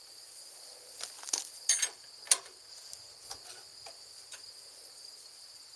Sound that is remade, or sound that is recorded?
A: recorded